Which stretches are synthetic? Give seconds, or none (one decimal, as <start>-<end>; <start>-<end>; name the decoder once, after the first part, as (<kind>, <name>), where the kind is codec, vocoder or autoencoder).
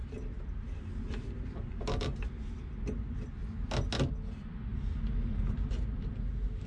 none